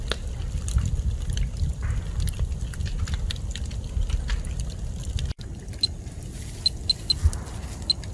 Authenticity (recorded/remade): recorded